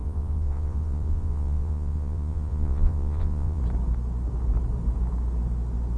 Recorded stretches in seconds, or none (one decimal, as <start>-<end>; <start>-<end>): 3.6-6.0